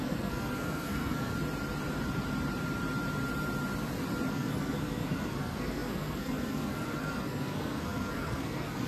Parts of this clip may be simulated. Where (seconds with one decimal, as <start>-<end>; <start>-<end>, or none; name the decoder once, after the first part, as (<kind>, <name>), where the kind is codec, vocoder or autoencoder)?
0.0-1.3 (codec, SNAC); 4.3-8.9